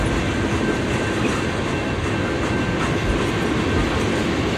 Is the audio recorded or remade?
recorded